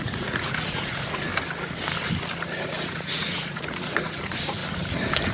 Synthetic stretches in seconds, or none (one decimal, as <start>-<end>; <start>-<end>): 0.0-1.3; 2.6-4.6